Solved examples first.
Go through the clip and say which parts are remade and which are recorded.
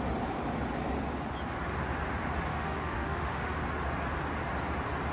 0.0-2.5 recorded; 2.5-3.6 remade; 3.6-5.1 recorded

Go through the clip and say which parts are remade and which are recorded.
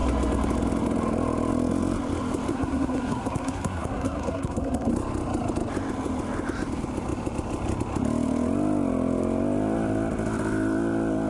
0.0-2.5 recorded; 2.5-4.9 remade; 4.9-11.3 recorded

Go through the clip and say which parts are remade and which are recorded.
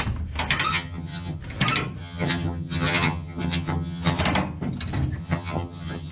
0.0-0.7 recorded; 0.7-1.4 remade; 1.4-2.0 recorded; 2.0-4.2 remade; 4.2-5.2 recorded; 5.2-6.1 remade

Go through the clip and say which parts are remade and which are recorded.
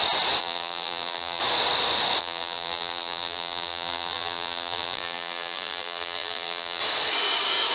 0.0-0.4 recorded; 0.4-1.4 remade; 1.4-2.2 recorded; 2.2-6.8 remade; 6.8-7.7 recorded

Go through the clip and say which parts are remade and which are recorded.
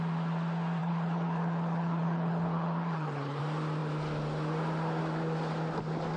0.0-0.8 recorded; 0.8-3.4 remade; 3.4-6.2 recorded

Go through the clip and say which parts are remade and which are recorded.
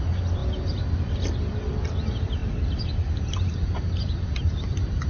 0.0-5.1 recorded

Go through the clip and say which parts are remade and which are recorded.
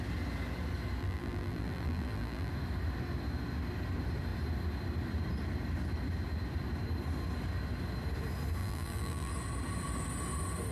0.0-1.0 recorded; 1.0-2.5 remade; 2.5-8.6 recorded; 8.6-9.3 remade; 9.3-10.7 recorded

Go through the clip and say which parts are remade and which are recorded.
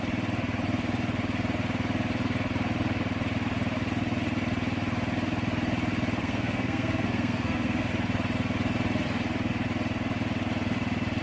0.0-6.2 recorded; 6.2-7.9 remade; 7.9-11.2 recorded